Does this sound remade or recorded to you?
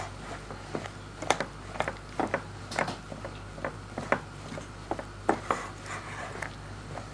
recorded